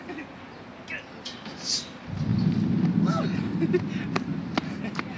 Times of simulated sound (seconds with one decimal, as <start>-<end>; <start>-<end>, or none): none

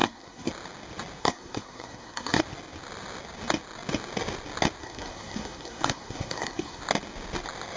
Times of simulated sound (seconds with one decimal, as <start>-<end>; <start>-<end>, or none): 0.0-0.5; 1.2-2.4; 4.8-6.8

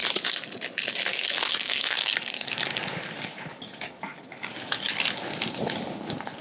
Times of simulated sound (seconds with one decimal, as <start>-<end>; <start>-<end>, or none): 1.1-4.9